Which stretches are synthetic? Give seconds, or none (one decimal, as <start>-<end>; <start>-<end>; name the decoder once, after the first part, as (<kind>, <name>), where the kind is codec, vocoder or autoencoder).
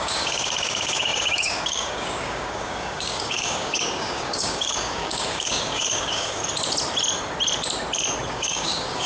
0.0-6.4 (codec, DAC); 8.3-9.1